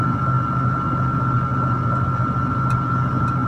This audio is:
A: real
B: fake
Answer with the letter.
A